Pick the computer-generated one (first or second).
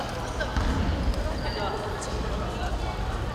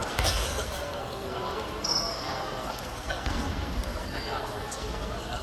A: second